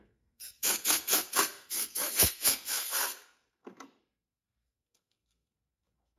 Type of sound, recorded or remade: remade